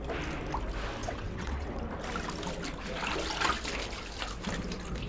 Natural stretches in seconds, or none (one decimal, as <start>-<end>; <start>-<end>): 0.0-1.0; 1.8-5.1